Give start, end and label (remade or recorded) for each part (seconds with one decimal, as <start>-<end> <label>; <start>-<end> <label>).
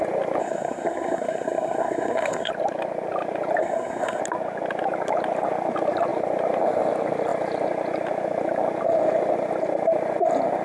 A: 0.0-0.4 recorded; 0.4-2.5 remade; 2.5-3.6 recorded; 3.6-4.2 remade; 4.2-10.6 recorded